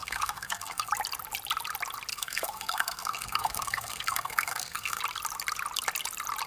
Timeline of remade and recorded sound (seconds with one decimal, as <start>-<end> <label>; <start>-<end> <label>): 0.0-0.9 remade; 0.9-2.1 recorded; 2.1-5.0 remade; 5.0-6.5 recorded